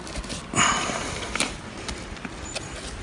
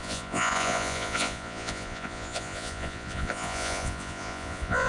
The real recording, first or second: first